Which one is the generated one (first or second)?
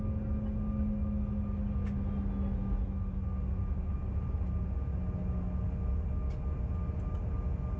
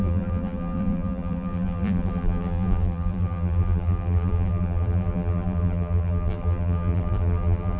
second